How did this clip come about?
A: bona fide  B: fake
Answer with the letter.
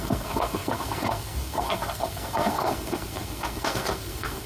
B